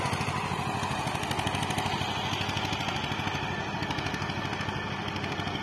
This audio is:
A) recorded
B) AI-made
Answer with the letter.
A